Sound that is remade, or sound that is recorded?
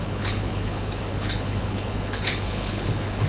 remade